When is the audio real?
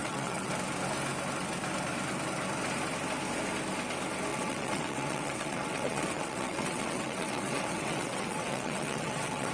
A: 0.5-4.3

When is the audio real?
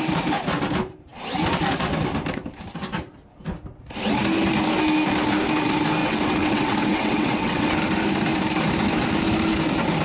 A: 0.0-6.0; 7.8-10.0